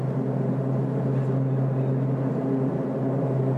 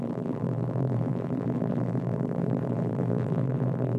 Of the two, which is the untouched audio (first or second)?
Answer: first